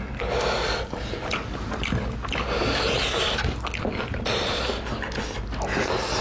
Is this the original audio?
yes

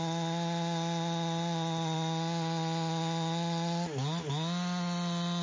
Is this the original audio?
yes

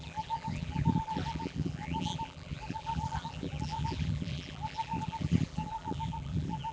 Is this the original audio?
no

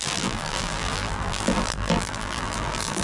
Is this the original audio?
no